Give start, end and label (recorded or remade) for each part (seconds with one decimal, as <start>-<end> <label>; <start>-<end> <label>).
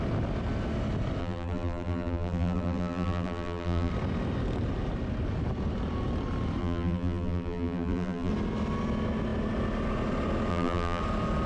0.0-1.2 recorded; 1.2-3.9 remade; 3.9-6.6 recorded; 6.6-8.3 remade; 8.3-10.5 recorded; 10.5-11.0 remade; 11.0-11.5 recorded